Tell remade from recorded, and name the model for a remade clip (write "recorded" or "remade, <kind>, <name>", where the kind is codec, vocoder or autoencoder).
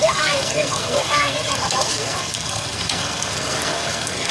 remade, codec, SNAC